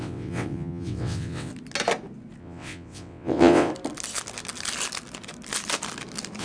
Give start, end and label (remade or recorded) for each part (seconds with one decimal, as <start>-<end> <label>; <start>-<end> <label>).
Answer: 0.0-1.5 remade; 1.5-2.4 recorded; 2.4-3.7 remade; 3.7-6.4 recorded